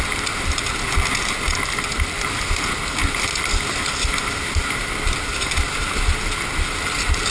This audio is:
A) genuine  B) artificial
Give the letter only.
A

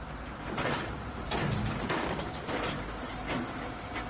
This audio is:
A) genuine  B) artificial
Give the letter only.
A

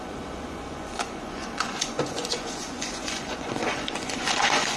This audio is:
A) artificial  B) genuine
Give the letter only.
A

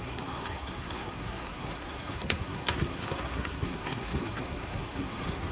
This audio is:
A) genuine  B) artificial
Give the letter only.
B